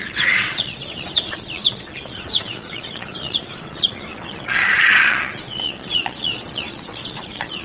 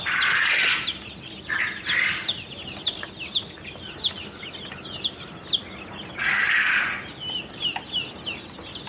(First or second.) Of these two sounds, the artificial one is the first